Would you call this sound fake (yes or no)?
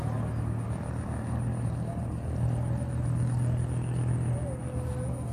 no